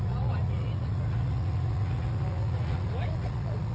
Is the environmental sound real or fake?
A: fake